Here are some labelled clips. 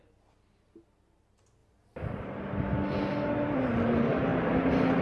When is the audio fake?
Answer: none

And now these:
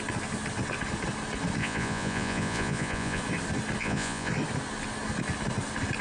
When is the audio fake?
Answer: 1.6-3.2; 3.8-4.3

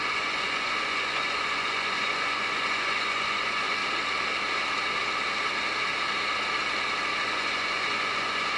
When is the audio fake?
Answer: 0.0-3.8; 7.2-8.6

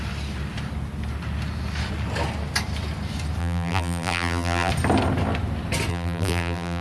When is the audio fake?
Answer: 3.4-4.7; 5.9-6.8

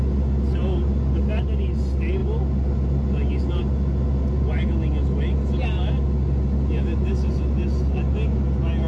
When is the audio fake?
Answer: none